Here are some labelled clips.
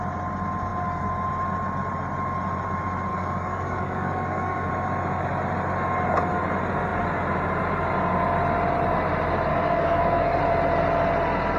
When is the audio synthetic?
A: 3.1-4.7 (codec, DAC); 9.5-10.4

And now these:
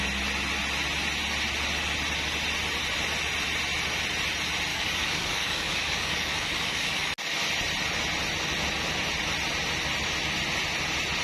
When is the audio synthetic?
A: 4.7-7.1 (codec, DAC)

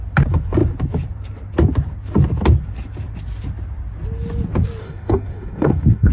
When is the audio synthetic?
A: 4.8-6.1 (codec, DAC)

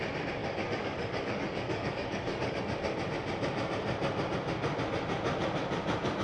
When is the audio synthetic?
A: 0.4-2.6 (codec, DAC)

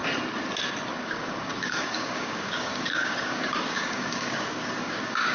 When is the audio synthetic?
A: 0.9-5.3 (codec, DAC)

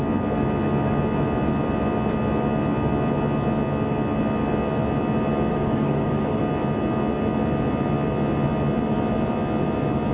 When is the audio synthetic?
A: 5.5-6.4 (codec, DAC)

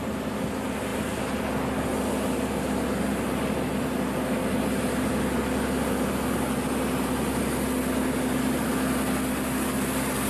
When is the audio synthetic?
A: none